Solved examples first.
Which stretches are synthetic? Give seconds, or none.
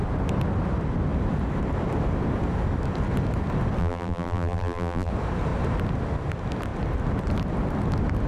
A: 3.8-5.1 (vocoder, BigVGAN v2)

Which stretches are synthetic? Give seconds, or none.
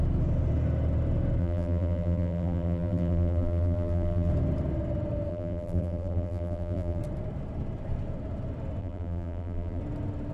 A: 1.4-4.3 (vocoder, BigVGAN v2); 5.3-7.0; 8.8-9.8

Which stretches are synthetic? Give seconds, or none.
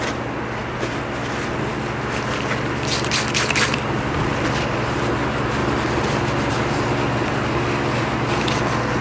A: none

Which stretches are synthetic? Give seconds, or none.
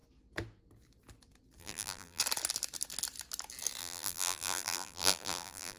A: 1.6-2.2 (vocoder, BigVGAN v2); 3.8-5.8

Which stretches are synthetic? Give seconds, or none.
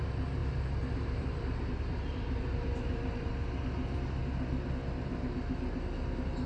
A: 0.4-3.3 (vocoder, BigVGAN v2)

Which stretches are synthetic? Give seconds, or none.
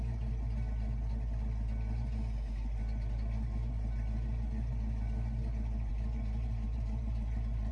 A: 5.9-7.7 (vocoder, BigVGAN v2)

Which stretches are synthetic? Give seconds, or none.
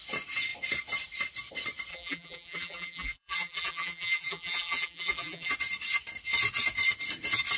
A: 1.9-5.5 (vocoder, BigVGAN v2)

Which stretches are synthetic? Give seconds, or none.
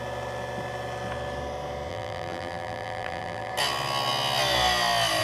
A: 1.9-3.5 (vocoder, BigVGAN v2)